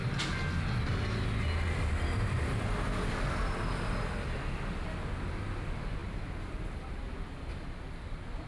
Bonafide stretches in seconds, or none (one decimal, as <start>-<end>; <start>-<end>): 0.0-8.5